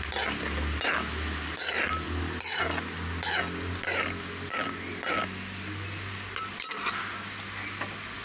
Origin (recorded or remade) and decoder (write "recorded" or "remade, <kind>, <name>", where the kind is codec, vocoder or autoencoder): recorded